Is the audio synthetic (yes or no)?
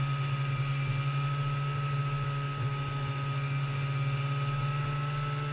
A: no